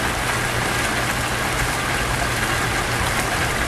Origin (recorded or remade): recorded